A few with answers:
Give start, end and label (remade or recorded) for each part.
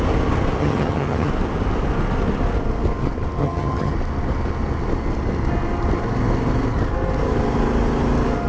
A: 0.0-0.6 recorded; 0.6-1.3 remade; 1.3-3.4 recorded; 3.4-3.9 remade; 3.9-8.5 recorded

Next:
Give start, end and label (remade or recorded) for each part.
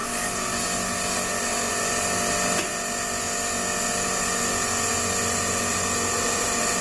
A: 0.0-6.8 recorded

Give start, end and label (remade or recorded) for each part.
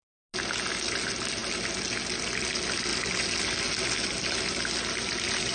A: 0.0-5.5 recorded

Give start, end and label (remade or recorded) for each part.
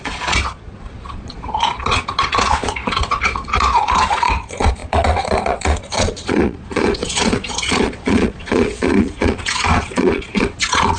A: 0.0-11.0 remade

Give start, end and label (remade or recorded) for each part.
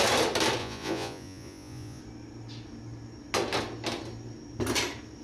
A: 0.0-0.6 recorded; 0.6-2.0 remade; 2.0-5.2 recorded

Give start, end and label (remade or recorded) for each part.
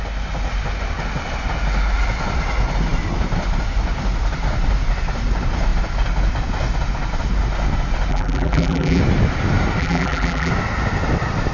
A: 0.0-8.1 recorded; 8.1-9.0 remade; 9.0-9.8 recorded; 9.8-10.5 remade; 10.5-11.5 recorded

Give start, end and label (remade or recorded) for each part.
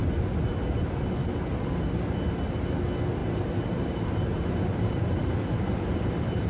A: 0.0-3.2 recorded; 3.2-5.8 remade; 5.8-6.5 recorded